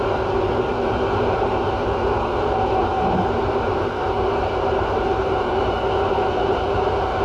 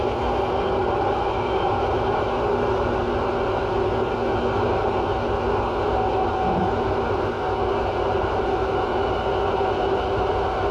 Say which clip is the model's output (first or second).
first